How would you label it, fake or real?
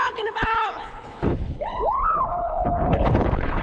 fake